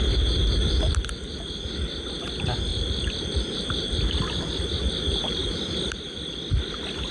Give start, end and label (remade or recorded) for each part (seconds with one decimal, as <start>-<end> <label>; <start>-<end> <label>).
0.0-2.7 recorded; 2.7-4.0 remade; 4.0-7.1 recorded